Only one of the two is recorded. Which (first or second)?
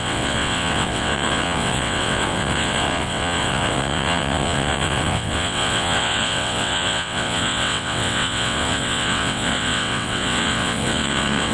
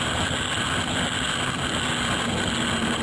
second